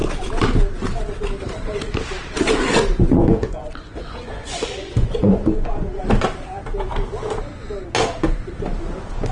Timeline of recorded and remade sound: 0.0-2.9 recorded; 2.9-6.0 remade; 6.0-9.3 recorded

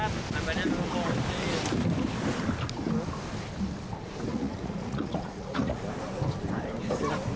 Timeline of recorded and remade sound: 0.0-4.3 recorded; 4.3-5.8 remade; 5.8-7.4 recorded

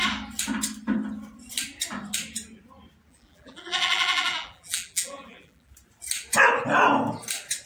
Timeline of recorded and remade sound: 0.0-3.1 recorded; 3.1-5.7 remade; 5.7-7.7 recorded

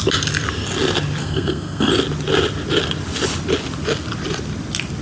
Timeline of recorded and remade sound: 0.0-1.2 recorded; 1.2-1.9 remade; 1.9-5.0 recorded